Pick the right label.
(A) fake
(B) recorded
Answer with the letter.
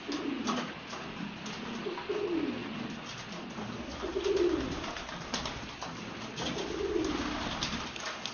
B